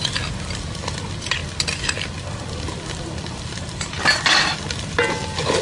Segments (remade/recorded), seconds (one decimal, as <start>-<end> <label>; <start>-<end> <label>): 0.0-5.6 recorded